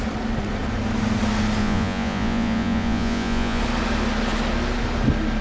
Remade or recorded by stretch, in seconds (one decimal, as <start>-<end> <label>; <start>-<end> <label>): 0.0-1.6 recorded; 1.6-3.6 remade; 3.6-5.4 recorded